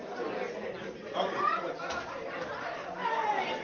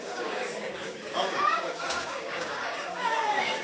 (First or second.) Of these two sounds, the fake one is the second